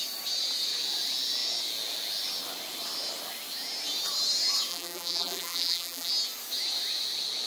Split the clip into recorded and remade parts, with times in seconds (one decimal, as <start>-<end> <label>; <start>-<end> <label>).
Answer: 0.0-4.7 recorded; 4.7-6.1 remade; 6.1-7.5 recorded